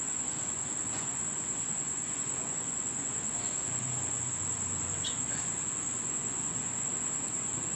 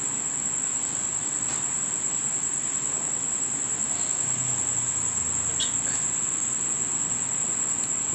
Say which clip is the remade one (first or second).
first